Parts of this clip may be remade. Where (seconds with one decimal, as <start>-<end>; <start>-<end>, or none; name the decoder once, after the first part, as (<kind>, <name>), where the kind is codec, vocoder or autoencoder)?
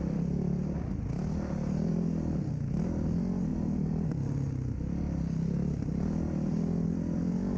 none